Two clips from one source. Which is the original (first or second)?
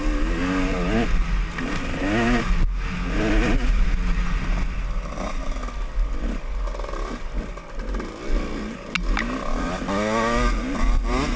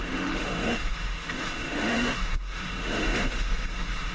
first